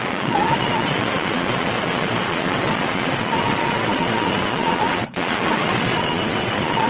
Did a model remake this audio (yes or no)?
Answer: yes